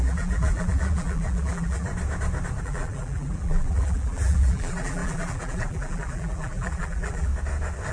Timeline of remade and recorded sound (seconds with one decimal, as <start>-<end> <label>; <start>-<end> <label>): 0.0-1.9 remade; 1.9-2.6 recorded; 2.6-7.3 remade; 7.3-7.9 recorded